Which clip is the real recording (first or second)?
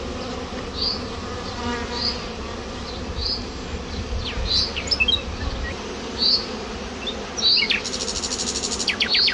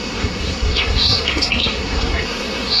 first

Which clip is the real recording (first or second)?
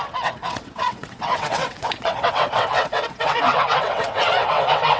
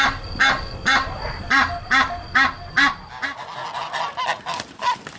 second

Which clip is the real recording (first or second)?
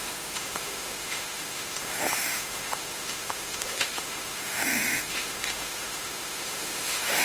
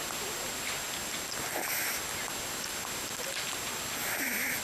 second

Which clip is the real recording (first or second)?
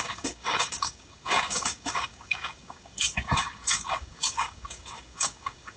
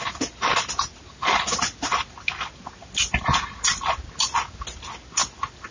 second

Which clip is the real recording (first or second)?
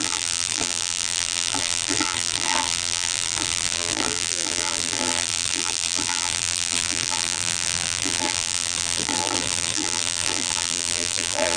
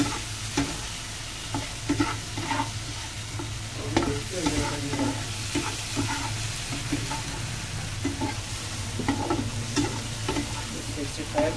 second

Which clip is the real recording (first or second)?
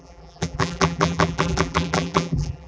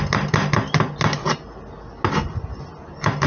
second